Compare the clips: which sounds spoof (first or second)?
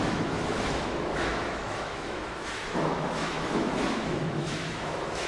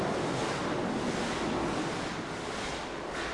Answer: first